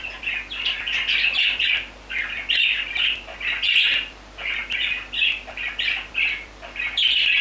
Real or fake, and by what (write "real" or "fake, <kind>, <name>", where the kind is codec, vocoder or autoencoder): real